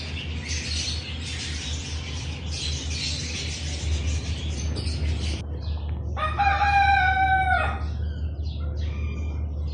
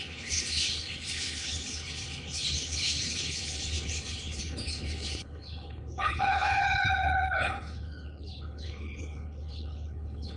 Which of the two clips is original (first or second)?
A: first